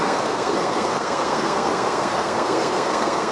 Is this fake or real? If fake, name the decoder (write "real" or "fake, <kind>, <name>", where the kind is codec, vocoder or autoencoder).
fake, codec, SNAC